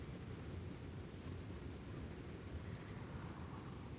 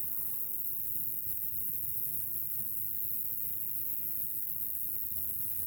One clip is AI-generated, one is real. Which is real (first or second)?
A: first